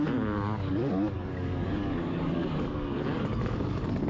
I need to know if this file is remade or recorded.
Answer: remade